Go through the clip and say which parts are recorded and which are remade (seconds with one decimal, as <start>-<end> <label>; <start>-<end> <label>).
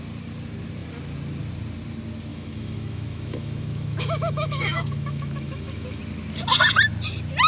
0.0-2.3 recorded; 2.3-6.0 remade; 6.0-7.5 recorded